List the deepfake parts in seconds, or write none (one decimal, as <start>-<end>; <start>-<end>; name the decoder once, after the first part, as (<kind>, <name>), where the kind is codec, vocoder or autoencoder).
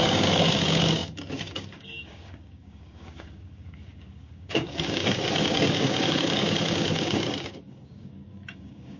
0.0-9.0 (codec, DAC)